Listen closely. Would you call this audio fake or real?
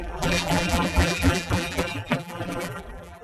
fake